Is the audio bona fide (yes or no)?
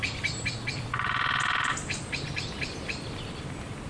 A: no